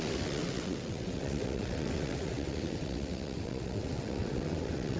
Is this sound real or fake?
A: fake